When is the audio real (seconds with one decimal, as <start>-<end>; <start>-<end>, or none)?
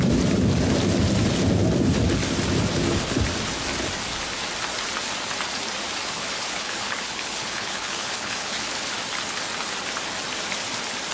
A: 0.0-6.0; 8.9-11.1